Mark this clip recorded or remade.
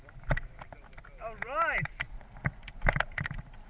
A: recorded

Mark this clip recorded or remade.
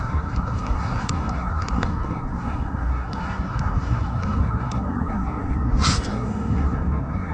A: remade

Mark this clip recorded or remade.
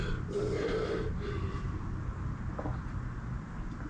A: recorded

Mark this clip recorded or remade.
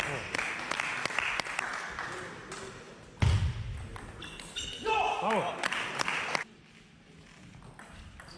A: recorded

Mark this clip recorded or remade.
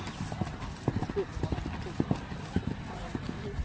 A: recorded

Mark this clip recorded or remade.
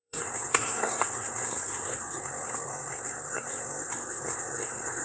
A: remade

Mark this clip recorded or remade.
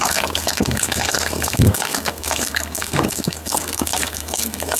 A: remade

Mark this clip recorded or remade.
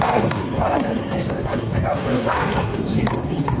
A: remade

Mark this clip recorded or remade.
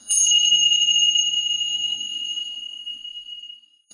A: remade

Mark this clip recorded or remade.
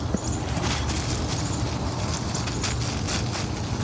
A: recorded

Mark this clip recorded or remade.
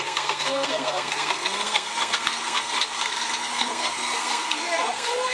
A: remade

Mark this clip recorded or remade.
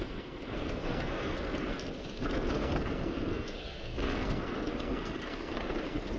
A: remade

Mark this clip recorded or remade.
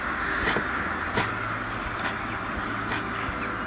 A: recorded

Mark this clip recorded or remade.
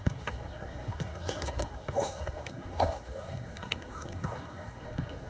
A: remade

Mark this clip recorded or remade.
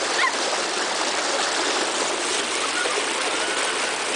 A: recorded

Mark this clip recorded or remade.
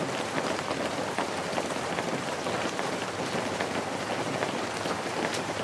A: recorded